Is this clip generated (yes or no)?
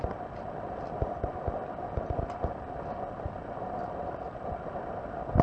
no